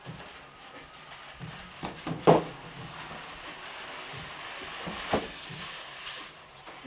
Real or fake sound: real